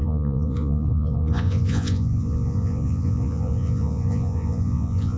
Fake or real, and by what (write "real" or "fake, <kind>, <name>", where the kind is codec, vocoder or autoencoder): fake, vocoder, Vocos